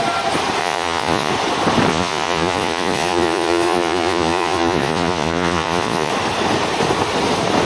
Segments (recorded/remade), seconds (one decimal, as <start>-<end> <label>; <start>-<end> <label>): 0.0-0.6 recorded; 0.6-1.3 remade; 1.3-1.9 recorded; 1.9-6.1 remade; 6.1-7.7 recorded